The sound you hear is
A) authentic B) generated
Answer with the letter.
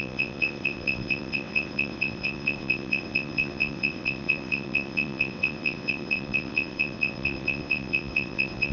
B